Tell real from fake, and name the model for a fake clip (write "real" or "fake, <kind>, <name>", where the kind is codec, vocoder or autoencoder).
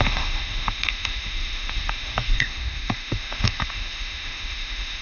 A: fake, autoencoder, DAC-VAE